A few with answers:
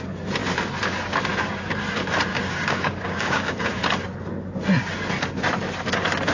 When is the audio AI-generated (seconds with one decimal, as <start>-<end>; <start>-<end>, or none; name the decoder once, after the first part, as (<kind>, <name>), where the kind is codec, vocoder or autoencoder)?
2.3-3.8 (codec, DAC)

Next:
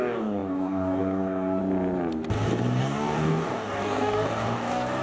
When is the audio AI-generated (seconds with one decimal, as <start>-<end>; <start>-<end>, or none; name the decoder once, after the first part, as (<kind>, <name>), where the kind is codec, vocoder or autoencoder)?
0.0-1.6 (codec, DAC); 2.8-5.0

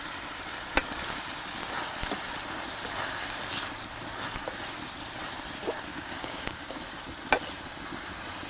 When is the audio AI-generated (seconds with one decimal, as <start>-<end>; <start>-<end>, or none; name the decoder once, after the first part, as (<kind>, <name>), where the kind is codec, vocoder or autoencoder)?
5.9-6.8 (codec, DAC)

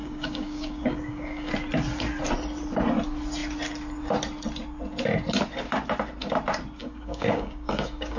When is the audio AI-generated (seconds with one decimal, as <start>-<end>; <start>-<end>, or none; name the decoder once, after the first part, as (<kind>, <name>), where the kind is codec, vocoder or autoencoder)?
0.0-1.5 (codec, DAC); 6.8-8.2

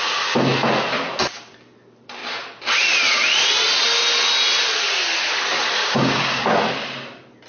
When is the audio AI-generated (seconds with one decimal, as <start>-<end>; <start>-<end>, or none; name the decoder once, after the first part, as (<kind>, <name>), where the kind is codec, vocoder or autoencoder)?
5.8-6.4 (codec, DAC)